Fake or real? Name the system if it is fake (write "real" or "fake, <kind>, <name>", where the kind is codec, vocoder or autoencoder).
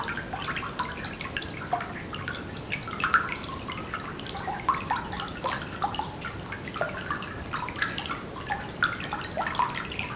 real